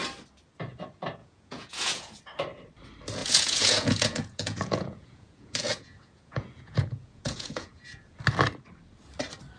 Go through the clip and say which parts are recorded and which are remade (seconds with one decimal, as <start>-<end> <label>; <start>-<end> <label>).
0.0-1.2 recorded; 1.2-2.2 remade; 2.2-3.2 recorded; 3.2-8.2 remade; 8.2-9.6 recorded